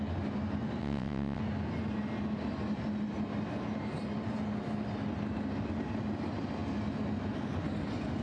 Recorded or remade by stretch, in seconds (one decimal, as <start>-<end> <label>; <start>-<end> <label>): 0.0-0.8 recorded; 0.8-1.4 remade; 1.4-8.2 recorded